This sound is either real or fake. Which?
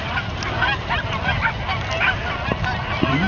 real